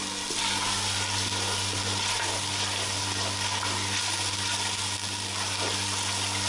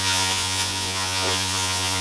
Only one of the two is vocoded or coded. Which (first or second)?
second